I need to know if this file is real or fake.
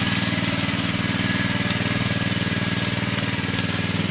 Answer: real